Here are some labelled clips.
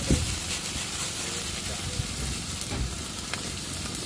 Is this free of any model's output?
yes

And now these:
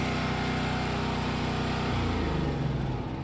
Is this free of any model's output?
yes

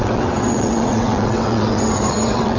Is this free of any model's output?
no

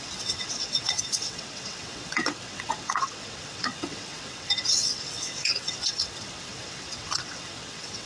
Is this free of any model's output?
no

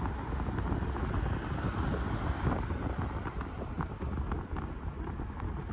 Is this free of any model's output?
yes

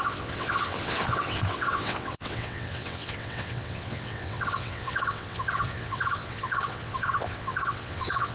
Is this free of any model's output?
no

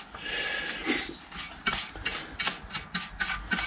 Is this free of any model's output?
yes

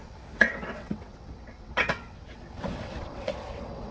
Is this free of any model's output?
no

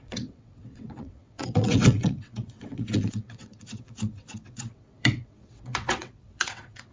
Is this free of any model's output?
no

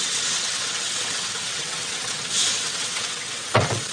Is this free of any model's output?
no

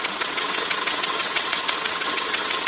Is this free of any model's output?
no